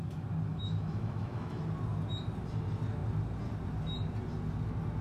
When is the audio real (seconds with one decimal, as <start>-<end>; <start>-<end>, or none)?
0.0-0.5; 1.6-5.0